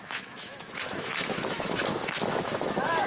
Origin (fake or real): fake